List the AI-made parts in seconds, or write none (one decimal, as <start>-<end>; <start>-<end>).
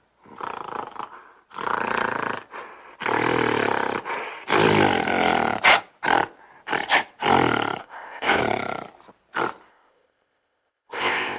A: 7.8-8.4; 9.7-11.4